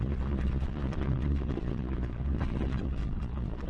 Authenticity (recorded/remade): remade